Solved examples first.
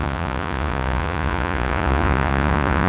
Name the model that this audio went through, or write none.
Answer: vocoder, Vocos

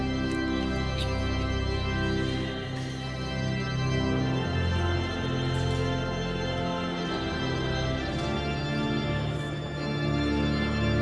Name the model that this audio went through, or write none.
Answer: none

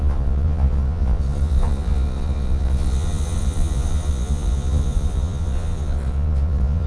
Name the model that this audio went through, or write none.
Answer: vocoder, Vocos